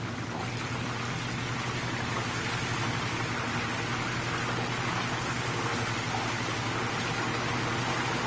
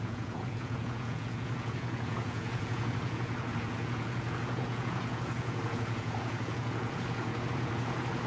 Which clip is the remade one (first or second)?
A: second